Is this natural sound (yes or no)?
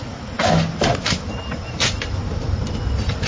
yes